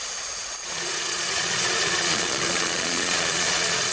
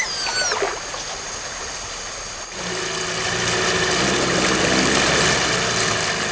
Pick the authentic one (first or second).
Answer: second